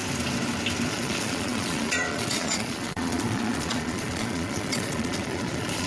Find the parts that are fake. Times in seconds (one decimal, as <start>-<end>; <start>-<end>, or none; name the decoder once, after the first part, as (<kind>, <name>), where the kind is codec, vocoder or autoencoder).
0.9-5.9 (vocoder, Vocos)